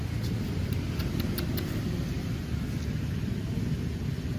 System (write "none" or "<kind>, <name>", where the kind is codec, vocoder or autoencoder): none